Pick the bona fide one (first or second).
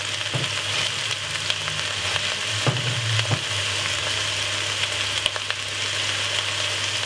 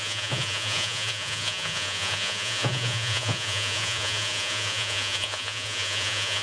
first